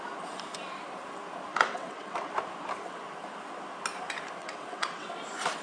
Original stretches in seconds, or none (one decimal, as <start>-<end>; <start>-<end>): 0.0-1.5; 2.3-4.4; 5.1-5.6